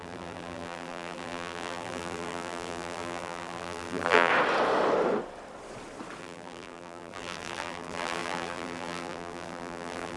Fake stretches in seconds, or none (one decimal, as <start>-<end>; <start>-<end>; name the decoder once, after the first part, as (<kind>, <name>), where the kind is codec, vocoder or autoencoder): 0.0-4.3 (vocoder, BigVGAN v2); 6.2-10.2